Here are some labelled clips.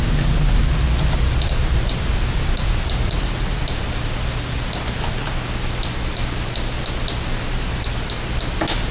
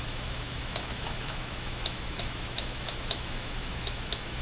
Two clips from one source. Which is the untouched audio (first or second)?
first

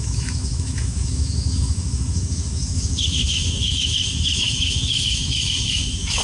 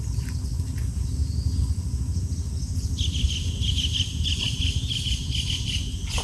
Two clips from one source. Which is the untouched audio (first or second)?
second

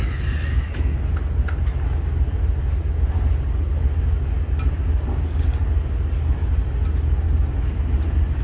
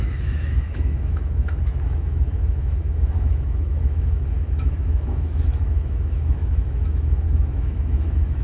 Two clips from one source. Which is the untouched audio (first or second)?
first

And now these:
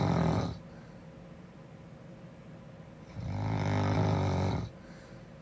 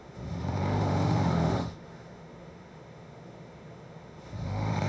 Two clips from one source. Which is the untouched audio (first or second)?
first